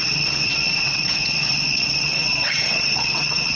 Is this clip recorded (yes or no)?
no